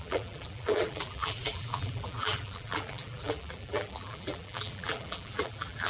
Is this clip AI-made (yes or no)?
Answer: yes